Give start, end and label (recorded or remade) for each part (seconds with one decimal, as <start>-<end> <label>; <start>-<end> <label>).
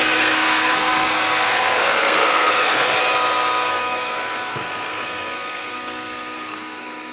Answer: 0.0-2.9 remade; 2.9-3.7 recorded; 3.7-7.1 remade